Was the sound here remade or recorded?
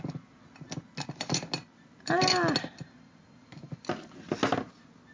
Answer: recorded